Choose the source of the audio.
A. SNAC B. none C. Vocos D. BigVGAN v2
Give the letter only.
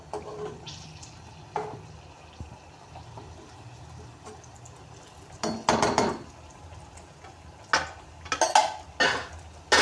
B